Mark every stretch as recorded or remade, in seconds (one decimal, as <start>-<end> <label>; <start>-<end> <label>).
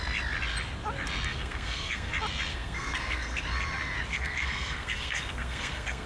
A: 0.0-1.3 recorded; 1.3-2.1 remade; 2.1-2.5 recorded; 2.5-3.4 remade; 3.4-4.1 recorded; 4.1-6.1 remade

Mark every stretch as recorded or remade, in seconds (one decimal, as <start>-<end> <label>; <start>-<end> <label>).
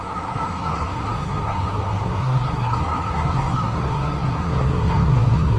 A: 0.0-5.6 remade